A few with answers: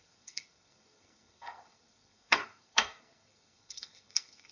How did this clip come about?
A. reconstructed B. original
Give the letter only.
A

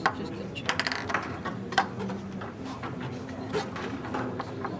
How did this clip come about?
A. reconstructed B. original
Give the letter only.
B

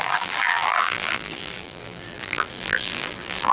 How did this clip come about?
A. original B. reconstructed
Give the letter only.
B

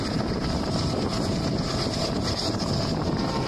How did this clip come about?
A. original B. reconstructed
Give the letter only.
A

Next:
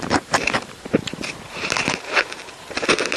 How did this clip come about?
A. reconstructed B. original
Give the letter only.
A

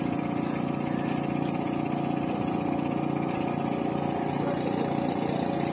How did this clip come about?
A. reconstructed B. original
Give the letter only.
B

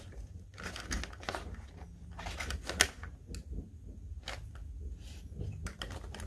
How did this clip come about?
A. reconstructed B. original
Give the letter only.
B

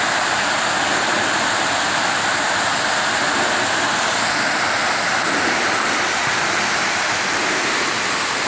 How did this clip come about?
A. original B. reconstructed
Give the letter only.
A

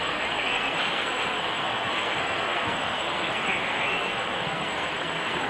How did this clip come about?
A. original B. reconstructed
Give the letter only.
B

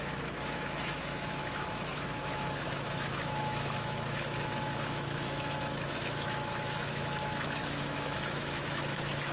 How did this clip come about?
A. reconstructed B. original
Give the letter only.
A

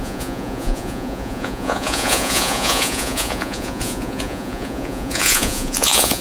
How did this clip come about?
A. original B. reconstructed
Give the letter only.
B